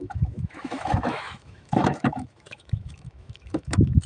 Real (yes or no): no